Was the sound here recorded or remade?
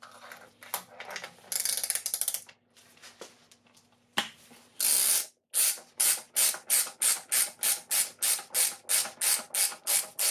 recorded